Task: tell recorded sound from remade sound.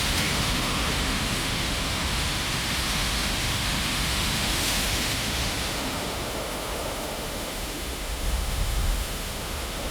remade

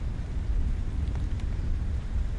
recorded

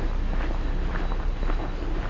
recorded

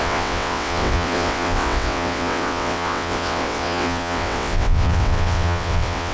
remade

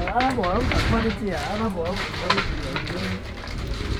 remade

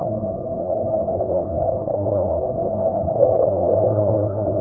remade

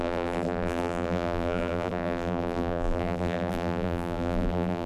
remade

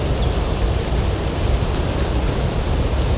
recorded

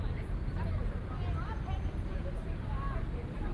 recorded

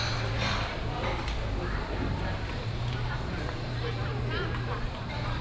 remade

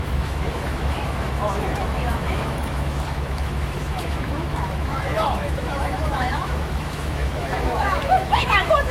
remade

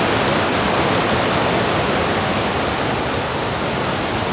recorded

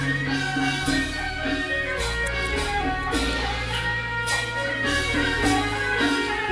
recorded